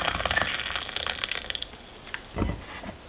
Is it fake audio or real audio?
real